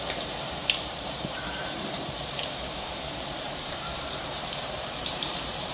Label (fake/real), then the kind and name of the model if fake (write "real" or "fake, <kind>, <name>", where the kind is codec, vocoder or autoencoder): fake, vocoder, BigVGAN v2